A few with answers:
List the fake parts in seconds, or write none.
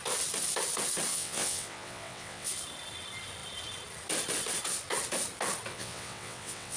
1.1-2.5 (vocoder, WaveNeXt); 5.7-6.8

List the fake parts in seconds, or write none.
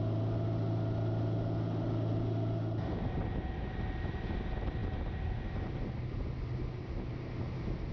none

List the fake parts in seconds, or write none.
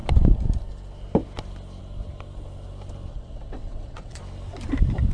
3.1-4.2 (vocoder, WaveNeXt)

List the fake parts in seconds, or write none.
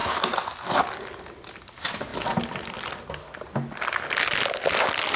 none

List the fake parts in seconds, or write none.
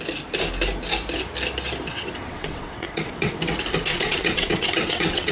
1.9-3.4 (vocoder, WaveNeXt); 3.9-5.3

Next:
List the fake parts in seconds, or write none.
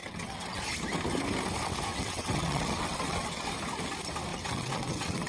0.0-0.6 (vocoder, WaveNeXt); 1.9-3.5; 4.3-5.3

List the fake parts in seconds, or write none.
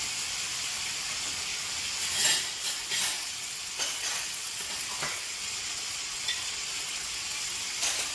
3.2-7.6 (vocoder, WaveNeXt)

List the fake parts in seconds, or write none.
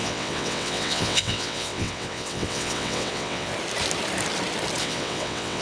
0.0-3.5 (vocoder, WaveNeXt); 4.8-5.6